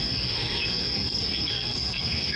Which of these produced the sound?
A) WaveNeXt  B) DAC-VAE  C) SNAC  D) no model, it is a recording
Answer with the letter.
C